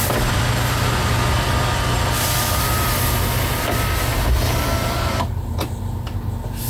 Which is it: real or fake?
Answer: real